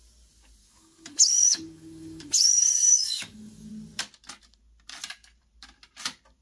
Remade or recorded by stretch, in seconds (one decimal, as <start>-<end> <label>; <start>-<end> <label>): 0.0-0.6 recorded; 0.6-3.7 remade; 3.7-6.4 recorded